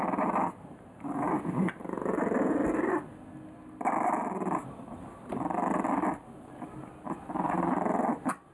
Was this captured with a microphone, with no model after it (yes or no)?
yes